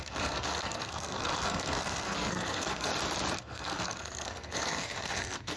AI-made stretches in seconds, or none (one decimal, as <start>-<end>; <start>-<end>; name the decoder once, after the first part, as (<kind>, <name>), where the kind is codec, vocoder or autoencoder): 0.0-2.9 (codec, SNAC); 3.4-5.6